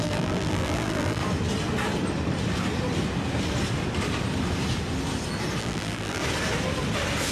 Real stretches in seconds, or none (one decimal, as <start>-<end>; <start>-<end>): 1.2-5.6; 6.2-7.3